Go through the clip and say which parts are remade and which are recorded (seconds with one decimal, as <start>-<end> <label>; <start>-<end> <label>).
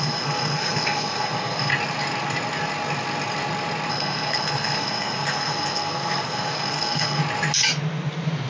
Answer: 0.0-1.7 remade; 1.7-3.9 recorded; 3.9-7.2 remade; 7.2-8.5 recorded